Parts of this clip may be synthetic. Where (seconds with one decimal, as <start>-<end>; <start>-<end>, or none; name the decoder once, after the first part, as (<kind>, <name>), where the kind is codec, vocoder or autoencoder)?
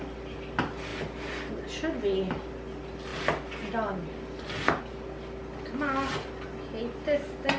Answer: none